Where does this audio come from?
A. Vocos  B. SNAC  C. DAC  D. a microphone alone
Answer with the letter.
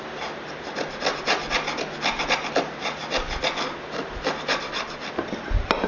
D